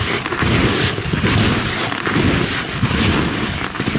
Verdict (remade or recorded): recorded